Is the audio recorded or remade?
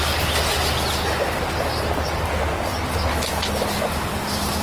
recorded